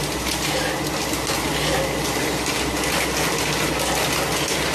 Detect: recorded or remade recorded